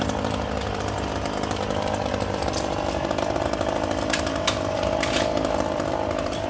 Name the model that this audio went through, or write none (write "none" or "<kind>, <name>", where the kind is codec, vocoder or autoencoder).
none